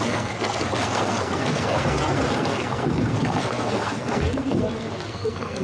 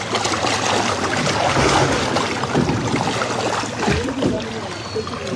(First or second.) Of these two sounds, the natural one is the second